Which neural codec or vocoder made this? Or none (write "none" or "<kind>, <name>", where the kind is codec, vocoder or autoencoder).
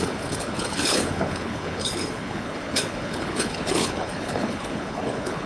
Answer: codec, HILCodec